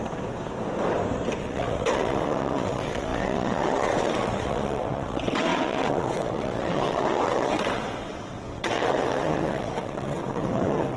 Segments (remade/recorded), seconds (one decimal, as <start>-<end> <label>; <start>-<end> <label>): 0.0-1.4 recorded; 1.4-11.0 remade